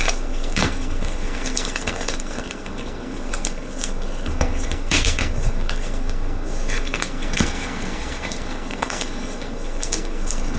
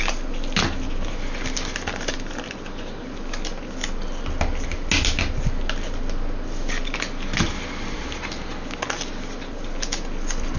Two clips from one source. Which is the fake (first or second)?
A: first